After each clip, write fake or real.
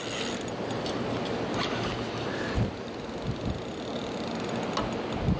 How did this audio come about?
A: real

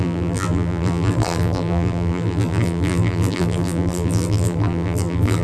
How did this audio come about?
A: fake